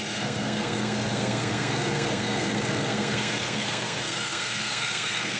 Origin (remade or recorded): remade